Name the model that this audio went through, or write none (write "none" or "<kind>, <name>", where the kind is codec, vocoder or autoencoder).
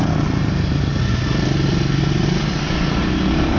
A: none